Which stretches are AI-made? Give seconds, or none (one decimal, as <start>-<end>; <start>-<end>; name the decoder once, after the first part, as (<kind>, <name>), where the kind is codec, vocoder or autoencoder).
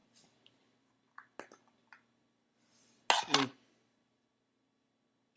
none